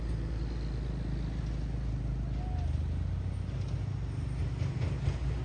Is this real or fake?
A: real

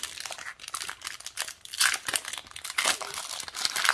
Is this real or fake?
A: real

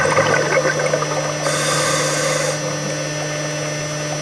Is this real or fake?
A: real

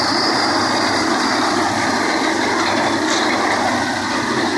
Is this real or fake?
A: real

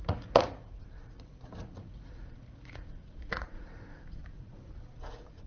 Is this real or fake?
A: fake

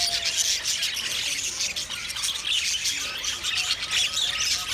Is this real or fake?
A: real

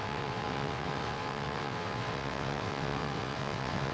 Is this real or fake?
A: fake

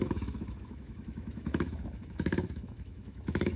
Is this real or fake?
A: fake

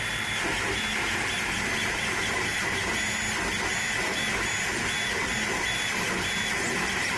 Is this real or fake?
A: real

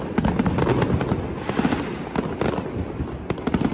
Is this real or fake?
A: real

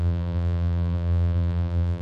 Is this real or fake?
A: fake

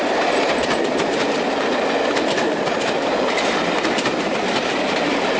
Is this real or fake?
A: real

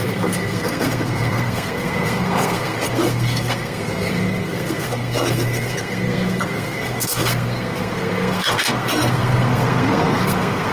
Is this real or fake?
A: fake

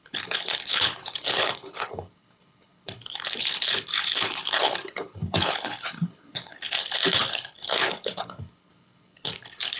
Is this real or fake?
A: fake